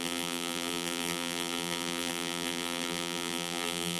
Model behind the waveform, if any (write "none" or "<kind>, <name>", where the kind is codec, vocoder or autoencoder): vocoder, BigVGAN v2